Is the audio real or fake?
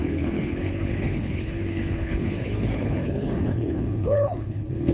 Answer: fake